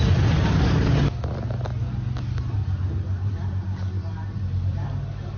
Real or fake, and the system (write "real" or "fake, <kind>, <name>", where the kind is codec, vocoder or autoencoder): real